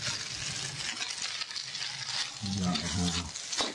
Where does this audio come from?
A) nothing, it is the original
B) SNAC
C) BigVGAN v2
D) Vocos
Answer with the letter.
A